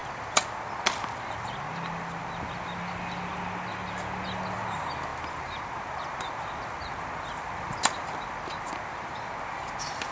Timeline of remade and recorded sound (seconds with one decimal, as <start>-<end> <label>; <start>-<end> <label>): 0.0-10.1 recorded

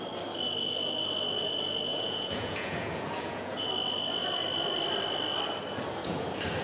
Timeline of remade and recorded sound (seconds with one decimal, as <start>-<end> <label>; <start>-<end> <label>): 0.0-1.9 recorded; 1.9-3.7 remade; 3.7-6.6 recorded

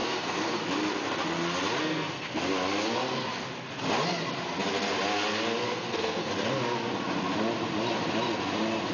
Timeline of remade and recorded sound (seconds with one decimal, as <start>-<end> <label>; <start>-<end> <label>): 0.0-0.6 remade; 0.6-1.8 recorded; 1.8-2.4 remade; 2.4-5.6 recorded; 5.6-6.3 remade; 6.3-8.9 recorded

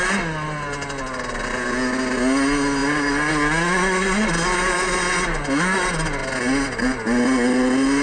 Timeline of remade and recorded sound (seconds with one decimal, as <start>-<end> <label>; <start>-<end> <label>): 0.0-8.0 recorded